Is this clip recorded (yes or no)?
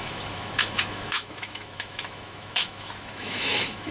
no